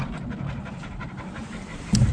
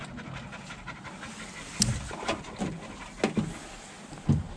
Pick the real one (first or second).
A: second